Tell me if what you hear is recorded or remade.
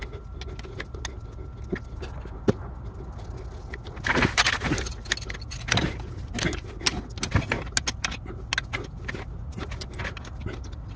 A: recorded